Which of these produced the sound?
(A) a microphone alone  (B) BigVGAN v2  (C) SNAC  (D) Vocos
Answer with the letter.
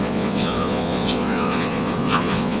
D